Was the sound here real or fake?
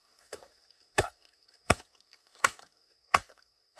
fake